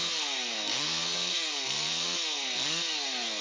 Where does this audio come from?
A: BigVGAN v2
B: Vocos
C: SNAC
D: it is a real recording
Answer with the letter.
C